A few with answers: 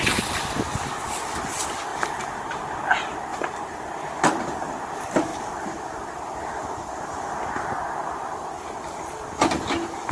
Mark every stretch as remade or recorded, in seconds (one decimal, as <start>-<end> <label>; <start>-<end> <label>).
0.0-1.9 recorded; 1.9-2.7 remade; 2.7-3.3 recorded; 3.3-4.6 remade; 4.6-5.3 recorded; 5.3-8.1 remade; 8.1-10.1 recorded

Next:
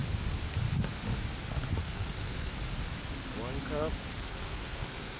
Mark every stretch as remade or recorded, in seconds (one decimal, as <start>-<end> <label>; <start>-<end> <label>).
0.0-1.8 recorded; 1.8-2.5 remade; 2.5-4.1 recorded; 4.1-5.2 remade

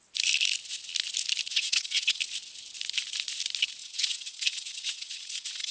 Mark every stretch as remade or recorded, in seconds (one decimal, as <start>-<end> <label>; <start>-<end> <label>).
0.0-1.5 recorded; 1.5-2.2 remade; 2.2-3.8 recorded; 3.8-5.7 remade

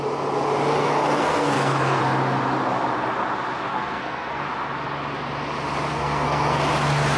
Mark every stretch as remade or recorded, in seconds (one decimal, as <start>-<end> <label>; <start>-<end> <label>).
0.0-0.8 recorded; 0.8-2.0 remade; 2.0-3.7 recorded; 3.7-4.4 remade; 4.4-5.9 recorded; 5.9-6.6 remade; 6.6-7.2 recorded